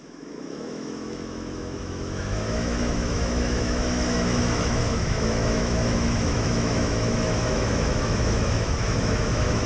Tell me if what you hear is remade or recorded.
remade